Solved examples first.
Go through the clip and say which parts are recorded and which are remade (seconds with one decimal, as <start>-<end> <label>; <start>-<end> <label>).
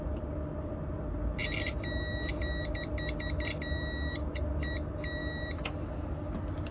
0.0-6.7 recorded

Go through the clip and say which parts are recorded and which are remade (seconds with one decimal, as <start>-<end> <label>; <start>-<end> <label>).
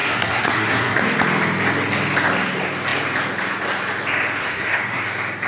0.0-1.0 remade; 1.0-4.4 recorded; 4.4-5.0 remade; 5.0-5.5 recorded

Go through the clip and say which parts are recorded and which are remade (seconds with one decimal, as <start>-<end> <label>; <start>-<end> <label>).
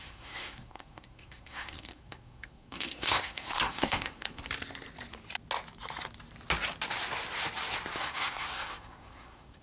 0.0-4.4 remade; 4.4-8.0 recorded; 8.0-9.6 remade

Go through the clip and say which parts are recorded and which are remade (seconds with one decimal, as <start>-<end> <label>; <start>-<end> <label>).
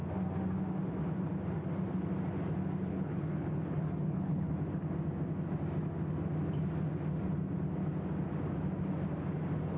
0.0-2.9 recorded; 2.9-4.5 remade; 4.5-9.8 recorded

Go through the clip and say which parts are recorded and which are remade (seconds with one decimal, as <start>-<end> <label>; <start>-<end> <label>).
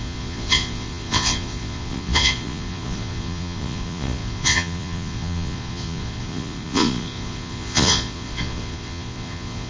0.0-9.7 remade